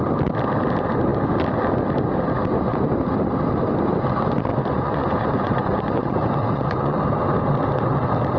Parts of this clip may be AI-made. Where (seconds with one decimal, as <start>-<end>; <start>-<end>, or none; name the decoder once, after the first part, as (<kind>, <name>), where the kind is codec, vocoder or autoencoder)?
4.5-7.0 (vocoder, Vocos)